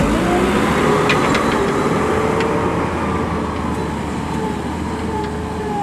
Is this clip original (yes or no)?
yes